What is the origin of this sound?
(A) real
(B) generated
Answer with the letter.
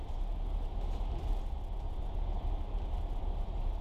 A